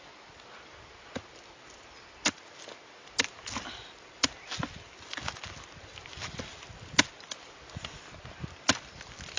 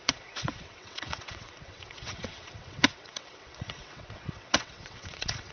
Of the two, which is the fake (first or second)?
second